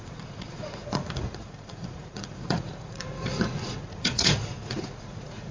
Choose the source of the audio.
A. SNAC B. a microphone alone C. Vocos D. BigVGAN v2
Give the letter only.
C